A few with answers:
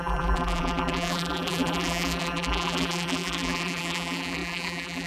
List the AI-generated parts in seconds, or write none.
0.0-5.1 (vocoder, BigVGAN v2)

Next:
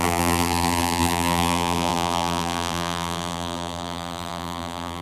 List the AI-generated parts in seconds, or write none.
0.0-5.0 (vocoder, BigVGAN v2)

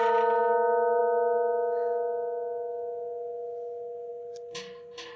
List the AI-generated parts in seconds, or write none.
none

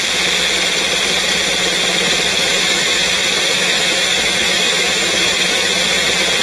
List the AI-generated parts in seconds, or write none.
2.3-5.8 (autoencoder, DAC-VAE)